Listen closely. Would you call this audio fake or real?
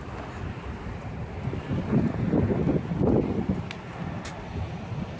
real